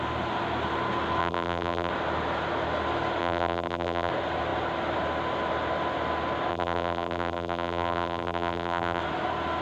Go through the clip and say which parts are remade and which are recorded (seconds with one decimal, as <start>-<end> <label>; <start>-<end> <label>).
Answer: 0.0-1.2 recorded; 1.2-1.9 remade; 1.9-3.2 recorded; 3.2-4.1 remade; 4.1-6.5 recorded; 6.5-9.0 remade; 9.0-9.6 recorded